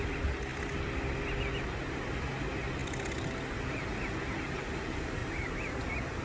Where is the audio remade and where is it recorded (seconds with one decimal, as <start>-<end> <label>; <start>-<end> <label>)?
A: 0.0-0.5 recorded; 0.5-1.4 remade; 1.4-5.2 recorded; 5.2-6.2 remade